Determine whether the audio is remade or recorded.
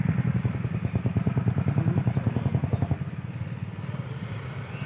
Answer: recorded